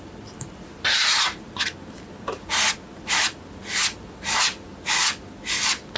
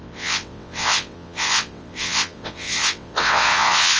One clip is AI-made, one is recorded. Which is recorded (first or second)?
first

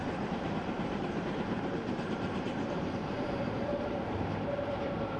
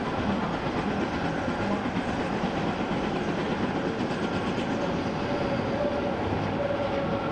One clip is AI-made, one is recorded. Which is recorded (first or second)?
second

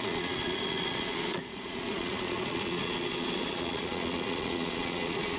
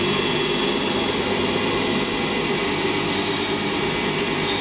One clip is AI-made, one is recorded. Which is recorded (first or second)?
second